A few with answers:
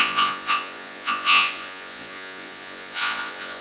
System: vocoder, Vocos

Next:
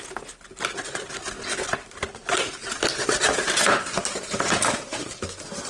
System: none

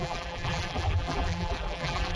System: vocoder, BigVGAN v2